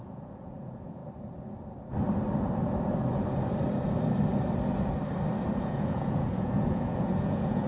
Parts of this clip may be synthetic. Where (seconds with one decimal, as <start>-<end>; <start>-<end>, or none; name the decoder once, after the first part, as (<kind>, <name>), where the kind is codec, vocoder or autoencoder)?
0.0-1.0 (vocoder, Vocos); 5.6-7.7